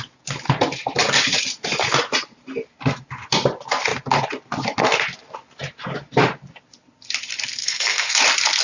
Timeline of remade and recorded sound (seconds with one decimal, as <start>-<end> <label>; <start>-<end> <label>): 0.0-7.6 recorded; 7.6-8.2 remade; 8.2-8.6 recorded